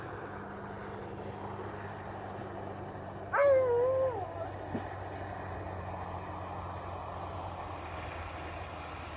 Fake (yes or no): no